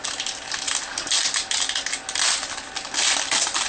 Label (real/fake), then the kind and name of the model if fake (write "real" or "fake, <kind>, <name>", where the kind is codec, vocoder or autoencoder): real